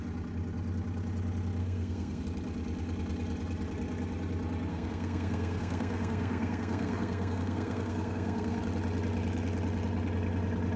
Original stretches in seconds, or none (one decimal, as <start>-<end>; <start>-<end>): 0.0-1.6; 2.2-4.7; 8.6-10.8